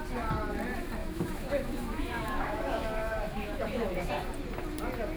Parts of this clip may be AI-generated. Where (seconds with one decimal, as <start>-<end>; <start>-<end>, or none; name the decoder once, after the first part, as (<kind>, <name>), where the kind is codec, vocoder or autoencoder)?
1.0-4.1 (autoencoder, DAC-VAE)